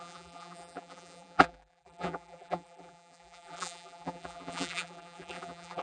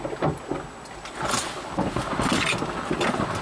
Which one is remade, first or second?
first